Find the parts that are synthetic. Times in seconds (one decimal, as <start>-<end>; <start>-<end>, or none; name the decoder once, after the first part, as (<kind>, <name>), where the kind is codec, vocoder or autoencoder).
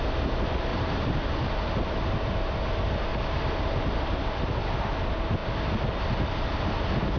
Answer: 0.7-1.4 (vocoder, BigVGAN v2); 3.1-3.9